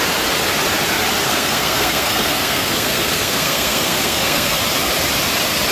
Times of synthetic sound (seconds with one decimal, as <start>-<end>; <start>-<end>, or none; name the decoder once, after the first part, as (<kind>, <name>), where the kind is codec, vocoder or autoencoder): 1.2-4.6 (codec, SNAC)